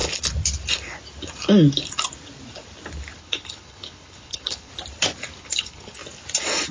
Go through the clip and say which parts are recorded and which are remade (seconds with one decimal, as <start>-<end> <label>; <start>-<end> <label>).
0.0-3.2 recorded; 3.2-4.7 remade; 4.7-5.4 recorded; 5.4-6.0 remade; 6.0-6.7 recorded